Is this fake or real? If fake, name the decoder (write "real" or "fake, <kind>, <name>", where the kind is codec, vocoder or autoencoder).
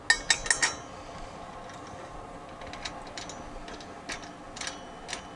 real